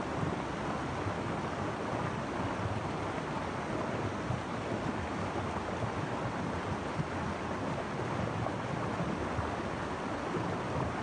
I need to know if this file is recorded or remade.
recorded